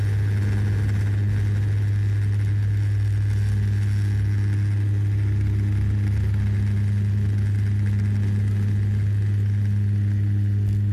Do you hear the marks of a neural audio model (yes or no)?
no